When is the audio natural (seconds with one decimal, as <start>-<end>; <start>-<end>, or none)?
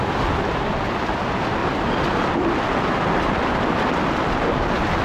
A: 0.0-1.6; 3.9-5.0